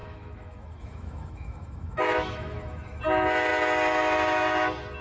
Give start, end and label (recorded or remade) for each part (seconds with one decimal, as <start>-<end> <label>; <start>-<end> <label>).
0.0-3.0 remade; 3.0-5.0 recorded